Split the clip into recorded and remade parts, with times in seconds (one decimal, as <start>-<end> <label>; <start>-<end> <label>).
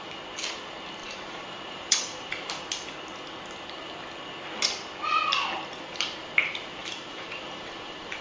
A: 0.0-1.0 recorded; 1.0-2.5 remade; 2.5-6.8 recorded; 6.8-8.2 remade